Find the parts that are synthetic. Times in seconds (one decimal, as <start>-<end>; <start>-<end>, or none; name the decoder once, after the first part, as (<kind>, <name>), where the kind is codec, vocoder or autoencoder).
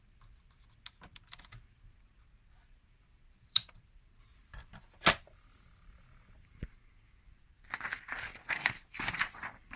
3.2-4.8 (vocoder, BigVGAN v2)